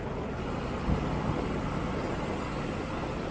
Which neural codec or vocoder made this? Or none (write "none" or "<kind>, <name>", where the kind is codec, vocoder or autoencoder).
none